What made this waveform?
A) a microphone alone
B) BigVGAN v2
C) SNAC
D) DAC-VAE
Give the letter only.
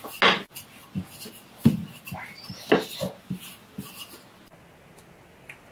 A